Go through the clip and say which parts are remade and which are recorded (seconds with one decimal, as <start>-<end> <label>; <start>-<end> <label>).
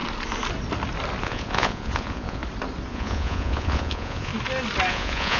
0.0-1.2 recorded; 1.2-2.4 remade; 2.4-2.9 recorded; 2.9-4.3 remade; 4.3-4.9 recorded; 4.9-5.4 remade